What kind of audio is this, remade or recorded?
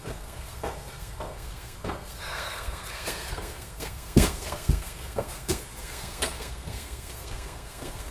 remade